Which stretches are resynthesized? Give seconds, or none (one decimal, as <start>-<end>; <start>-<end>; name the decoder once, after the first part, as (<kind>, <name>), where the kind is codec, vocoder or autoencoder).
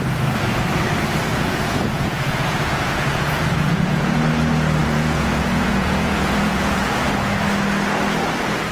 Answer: 1.3-4.2 (vocoder, Vocos); 4.8-7.0